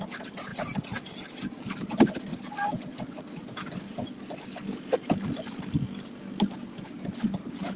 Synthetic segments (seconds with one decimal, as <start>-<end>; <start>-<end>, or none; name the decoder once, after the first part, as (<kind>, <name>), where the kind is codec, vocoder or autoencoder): none